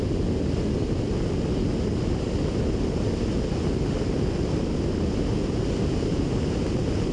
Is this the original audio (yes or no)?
yes